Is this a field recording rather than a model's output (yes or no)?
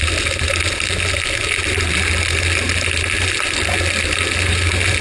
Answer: yes